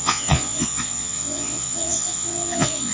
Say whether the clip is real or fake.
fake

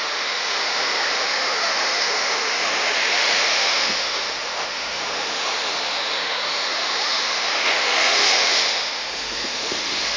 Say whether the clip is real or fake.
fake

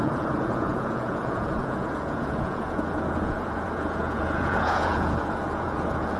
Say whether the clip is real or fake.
fake